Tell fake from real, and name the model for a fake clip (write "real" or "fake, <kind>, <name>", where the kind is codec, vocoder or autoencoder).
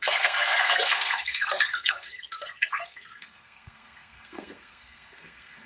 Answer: fake, codec, SNAC